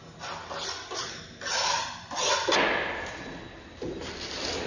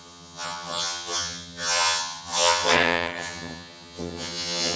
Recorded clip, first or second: first